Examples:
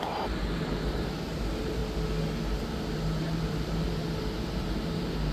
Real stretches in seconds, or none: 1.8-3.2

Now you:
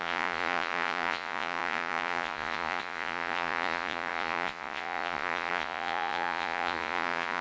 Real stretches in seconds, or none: none

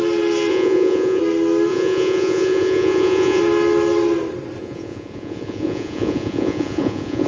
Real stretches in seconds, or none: 0.0-0.5; 1.2-1.7; 3.4-4.6

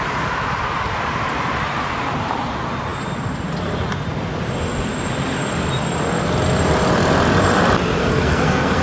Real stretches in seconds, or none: 0.0-8.0